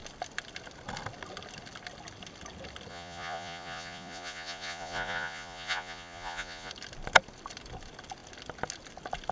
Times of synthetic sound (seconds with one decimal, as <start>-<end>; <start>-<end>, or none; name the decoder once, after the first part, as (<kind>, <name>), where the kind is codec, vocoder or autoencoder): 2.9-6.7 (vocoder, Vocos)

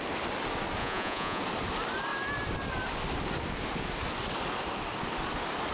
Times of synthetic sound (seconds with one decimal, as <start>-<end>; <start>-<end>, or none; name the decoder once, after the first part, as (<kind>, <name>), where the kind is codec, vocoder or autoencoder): 0.8-1.4 (vocoder, Vocos)

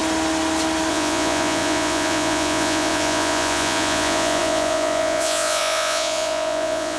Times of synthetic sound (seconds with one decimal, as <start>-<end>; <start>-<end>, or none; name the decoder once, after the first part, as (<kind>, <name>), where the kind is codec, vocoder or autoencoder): 0.9-7.0 (vocoder, Vocos)